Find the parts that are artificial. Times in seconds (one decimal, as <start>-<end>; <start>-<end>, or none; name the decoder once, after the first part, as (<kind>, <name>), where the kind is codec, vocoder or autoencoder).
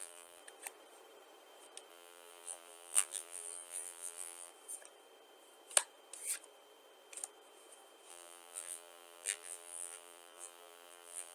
0.0-0.4 (vocoder, BigVGAN v2); 1.9-4.5; 8.1-11.3